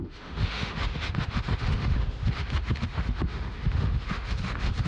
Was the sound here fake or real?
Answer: fake